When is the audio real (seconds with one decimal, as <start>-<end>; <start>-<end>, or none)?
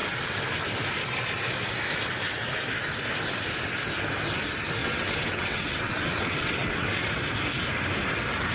0.0-4.8; 7.1-8.5